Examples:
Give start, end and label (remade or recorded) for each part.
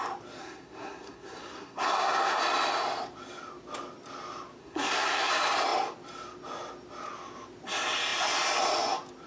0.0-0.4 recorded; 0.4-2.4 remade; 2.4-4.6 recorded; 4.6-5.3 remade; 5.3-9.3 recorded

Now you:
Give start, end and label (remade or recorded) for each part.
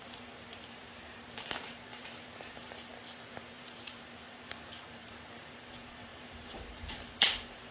0.0-2.9 remade; 2.9-3.4 recorded; 3.4-7.7 remade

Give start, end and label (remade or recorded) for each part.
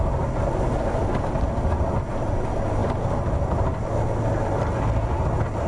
0.0-5.7 recorded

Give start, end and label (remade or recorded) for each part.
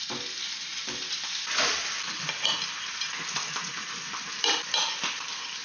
0.0-5.6 recorded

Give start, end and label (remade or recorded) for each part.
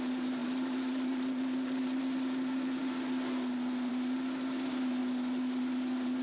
0.0-0.4 recorded; 0.4-2.0 remade; 2.0-6.2 recorded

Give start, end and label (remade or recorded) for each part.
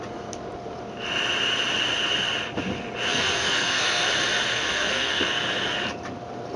0.0-3.1 recorded; 3.1-4.1 remade; 4.1-4.5 recorded; 4.5-5.3 remade; 5.3-6.6 recorded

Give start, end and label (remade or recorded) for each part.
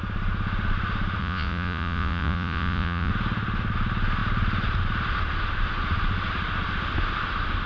0.0-1.2 recorded; 1.2-3.1 remade; 3.1-7.7 recorded